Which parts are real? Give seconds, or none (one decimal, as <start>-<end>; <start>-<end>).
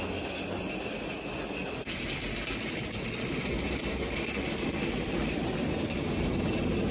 0.0-6.9